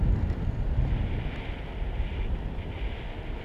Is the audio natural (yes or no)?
yes